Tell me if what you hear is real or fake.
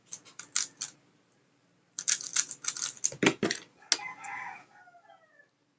real